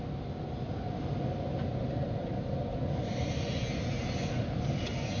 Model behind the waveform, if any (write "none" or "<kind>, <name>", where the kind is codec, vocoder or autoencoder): none